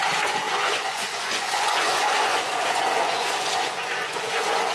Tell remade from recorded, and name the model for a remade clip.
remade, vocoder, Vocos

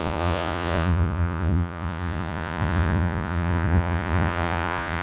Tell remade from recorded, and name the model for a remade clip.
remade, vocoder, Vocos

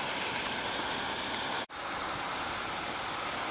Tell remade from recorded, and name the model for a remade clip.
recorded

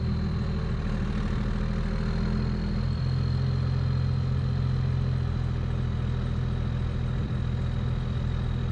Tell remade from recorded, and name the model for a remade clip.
recorded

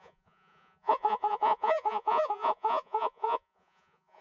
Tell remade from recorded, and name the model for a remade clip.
remade, vocoder, Vocos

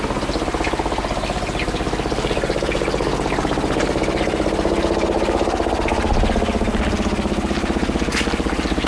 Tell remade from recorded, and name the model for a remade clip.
recorded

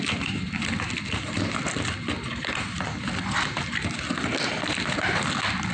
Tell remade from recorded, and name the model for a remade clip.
recorded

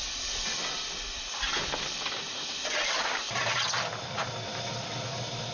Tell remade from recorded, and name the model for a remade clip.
recorded